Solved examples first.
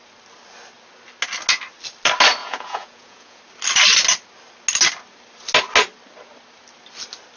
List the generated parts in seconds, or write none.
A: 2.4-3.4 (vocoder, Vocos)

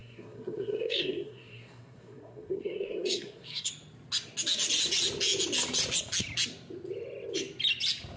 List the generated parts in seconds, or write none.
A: 0.0-3.7 (codec, SNAC)

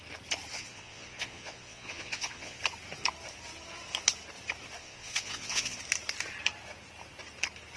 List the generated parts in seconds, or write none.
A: 0.5-2.6 (vocoder, Vocos); 4.8-5.8

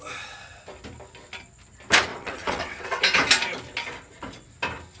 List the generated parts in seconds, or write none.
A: 2.1-3.0 (vocoder, WaveNeXt)

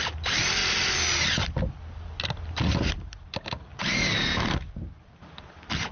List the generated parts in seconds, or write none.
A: 0.0-0.6 (vocoder, BigVGAN v2); 2.9-3.7; 4.9-5.9

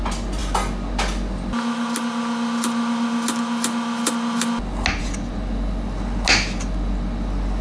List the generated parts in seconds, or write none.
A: none

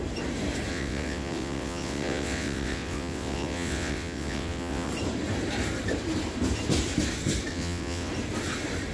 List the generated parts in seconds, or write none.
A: 0.7-4.9 (vocoder, WaveNeXt); 7.5-8.1

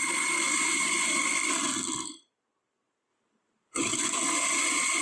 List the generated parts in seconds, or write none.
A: 0.0-1.2 (vocoder, BigVGAN v2); 2.7-5.0